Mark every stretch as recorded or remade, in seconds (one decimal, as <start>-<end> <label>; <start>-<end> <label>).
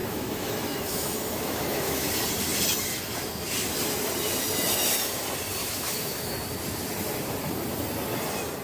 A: 0.0-2.1 remade; 2.1-5.6 recorded; 5.6-6.3 remade; 6.3-8.6 recorded